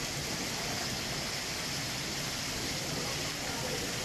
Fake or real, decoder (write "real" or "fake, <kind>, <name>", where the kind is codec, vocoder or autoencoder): real